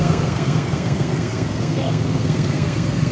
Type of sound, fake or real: fake